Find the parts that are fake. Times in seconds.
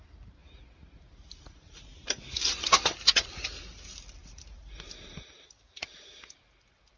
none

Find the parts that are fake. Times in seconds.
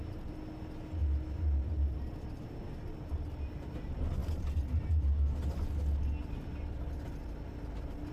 none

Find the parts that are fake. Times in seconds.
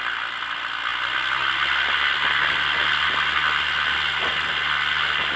none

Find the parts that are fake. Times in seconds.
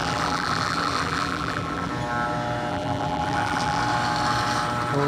0.0-1.9 (vocoder, BigVGAN v2); 2.7-3.8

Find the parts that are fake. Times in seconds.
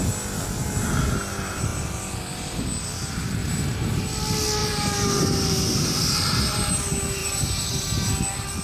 3.4-4.0 (vocoder, BigVGAN v2); 4.6-6.7; 7.2-8.1